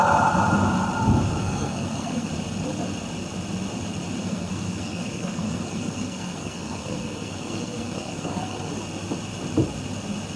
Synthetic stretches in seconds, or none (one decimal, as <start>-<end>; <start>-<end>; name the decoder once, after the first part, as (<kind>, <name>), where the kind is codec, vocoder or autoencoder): 1.4-2.3 (codec, SNAC); 4.2-8.7